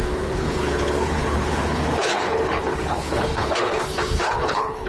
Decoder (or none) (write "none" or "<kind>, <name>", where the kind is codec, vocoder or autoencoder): codec, HILCodec